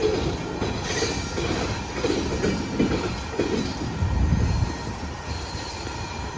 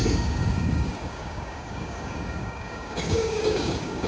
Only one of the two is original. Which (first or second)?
first